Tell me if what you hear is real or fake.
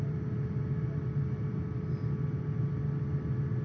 real